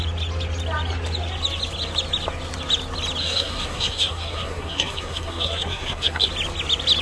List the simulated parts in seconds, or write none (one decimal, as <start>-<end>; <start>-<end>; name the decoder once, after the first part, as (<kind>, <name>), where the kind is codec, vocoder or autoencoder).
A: 3.2-6.3 (codec, SNAC)